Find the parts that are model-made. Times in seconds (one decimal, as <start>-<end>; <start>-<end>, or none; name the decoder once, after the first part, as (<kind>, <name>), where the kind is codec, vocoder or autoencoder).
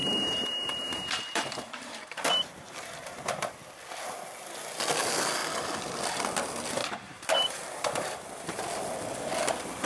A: 0.0-3.5 (vocoder, BigVGAN v2); 6.8-8.6